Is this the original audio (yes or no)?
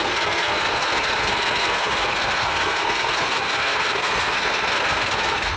no